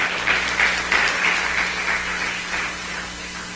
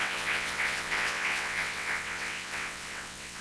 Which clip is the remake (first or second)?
second